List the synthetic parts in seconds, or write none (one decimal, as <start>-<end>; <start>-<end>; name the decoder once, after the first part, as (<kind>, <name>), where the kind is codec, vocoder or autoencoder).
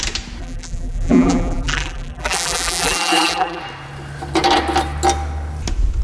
0.4-3.6 (vocoder, BigVGAN v2)